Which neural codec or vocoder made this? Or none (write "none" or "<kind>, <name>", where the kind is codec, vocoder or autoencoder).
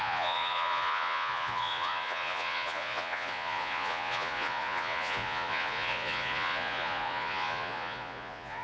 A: vocoder, Vocos